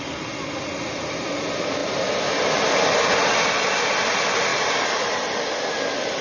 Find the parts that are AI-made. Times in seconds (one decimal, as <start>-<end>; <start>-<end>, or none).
4.5-5.6